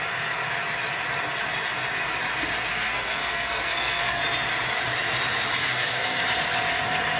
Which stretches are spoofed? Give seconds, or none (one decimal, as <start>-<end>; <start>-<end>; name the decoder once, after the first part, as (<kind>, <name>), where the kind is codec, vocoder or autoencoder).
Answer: 2.7-4.2 (codec, SNAC); 5.6-6.2